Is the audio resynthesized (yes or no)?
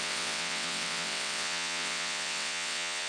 yes